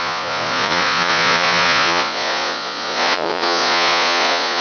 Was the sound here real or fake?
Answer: fake